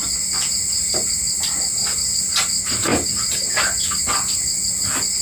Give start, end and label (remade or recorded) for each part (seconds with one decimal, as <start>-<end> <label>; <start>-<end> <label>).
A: 0.0-5.2 recorded